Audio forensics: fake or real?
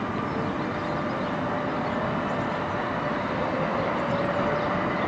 real